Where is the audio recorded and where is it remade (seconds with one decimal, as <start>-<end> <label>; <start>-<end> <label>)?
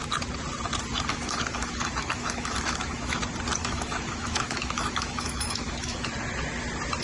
0.0-1.1 recorded; 1.1-3.2 remade; 3.2-3.6 recorded; 3.6-6.1 remade; 6.1-7.0 recorded